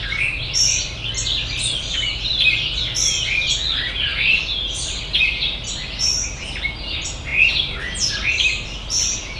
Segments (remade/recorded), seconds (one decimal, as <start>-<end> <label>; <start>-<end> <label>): 0.0-9.4 recorded